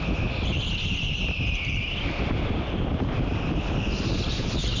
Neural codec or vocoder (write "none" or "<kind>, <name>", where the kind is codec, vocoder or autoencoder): none